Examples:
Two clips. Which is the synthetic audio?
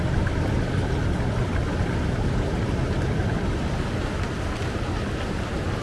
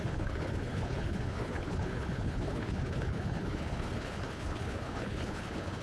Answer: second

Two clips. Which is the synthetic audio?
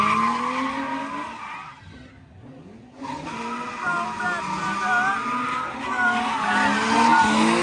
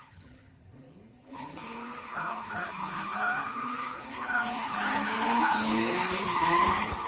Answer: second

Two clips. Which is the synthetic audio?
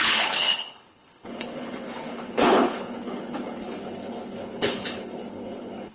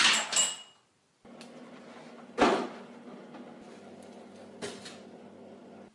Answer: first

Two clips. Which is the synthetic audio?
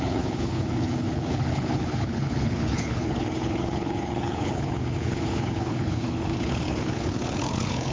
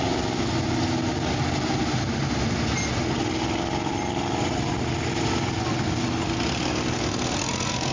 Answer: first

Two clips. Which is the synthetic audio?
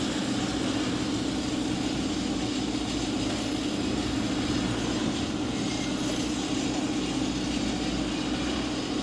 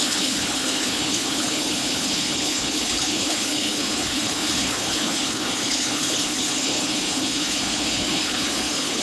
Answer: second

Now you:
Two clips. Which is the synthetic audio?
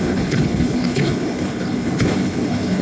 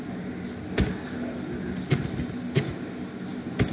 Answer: first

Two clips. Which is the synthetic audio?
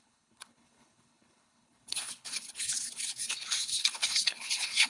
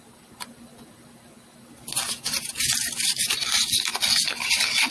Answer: first